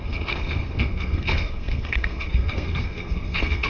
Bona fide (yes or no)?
no